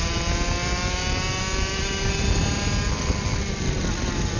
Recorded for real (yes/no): yes